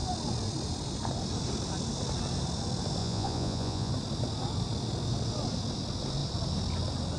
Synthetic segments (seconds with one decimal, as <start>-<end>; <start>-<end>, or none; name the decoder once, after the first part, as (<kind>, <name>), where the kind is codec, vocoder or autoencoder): 3.0-3.9 (vocoder, Vocos)